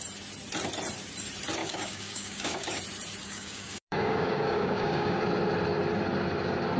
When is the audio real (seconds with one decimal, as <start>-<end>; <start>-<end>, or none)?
0.0-1.6; 2.8-3.2; 5.2-6.8